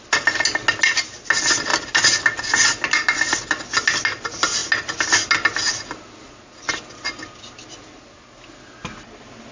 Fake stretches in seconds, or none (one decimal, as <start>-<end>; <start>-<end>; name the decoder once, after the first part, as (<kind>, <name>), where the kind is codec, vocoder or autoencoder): none